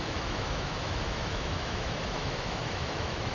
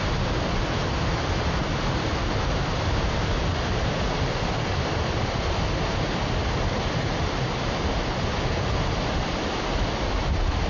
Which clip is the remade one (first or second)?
first